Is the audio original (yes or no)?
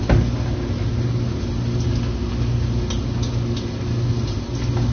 yes